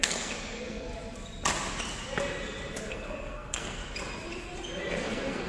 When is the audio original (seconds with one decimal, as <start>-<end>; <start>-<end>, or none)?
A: 0.9-2.9; 3.8-4.8